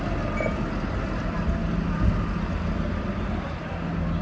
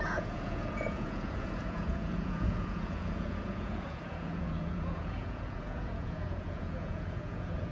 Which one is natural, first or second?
first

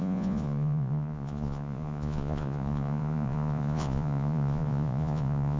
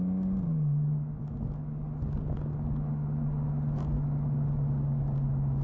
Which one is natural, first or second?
second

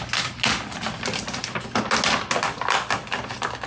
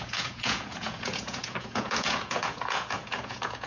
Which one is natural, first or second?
first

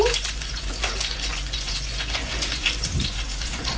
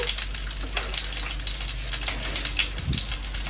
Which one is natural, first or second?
second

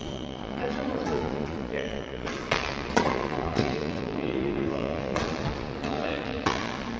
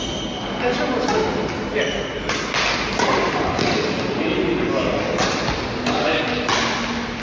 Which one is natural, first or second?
second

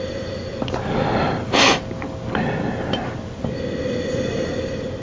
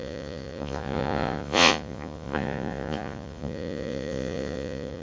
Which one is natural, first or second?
first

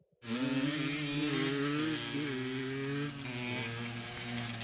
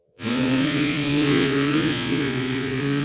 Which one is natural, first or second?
first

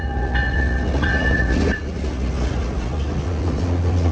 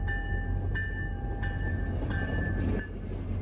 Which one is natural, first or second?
second